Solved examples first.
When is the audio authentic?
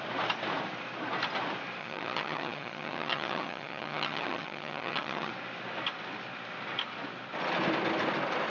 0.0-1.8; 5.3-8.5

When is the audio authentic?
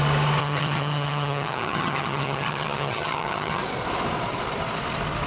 0.0-0.4; 3.6-5.3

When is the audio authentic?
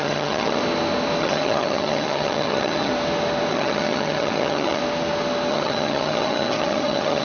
0.6-1.2; 2.9-3.5; 4.8-5.5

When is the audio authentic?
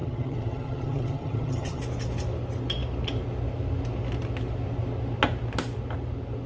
1.8-6.5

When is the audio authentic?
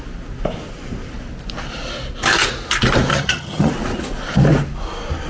0.0-3.1; 3.7-5.3